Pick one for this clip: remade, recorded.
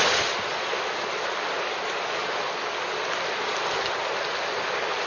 recorded